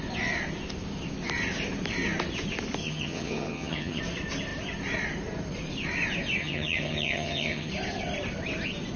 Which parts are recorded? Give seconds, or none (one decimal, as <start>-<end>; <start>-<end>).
0.0-2.8; 4.0-6.4; 7.7-9.0